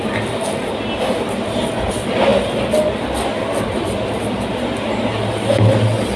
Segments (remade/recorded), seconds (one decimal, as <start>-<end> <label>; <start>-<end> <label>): 0.0-6.2 recorded